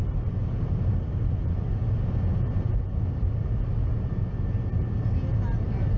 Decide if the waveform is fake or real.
real